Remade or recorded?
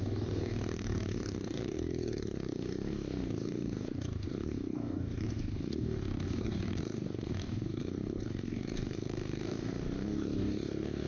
remade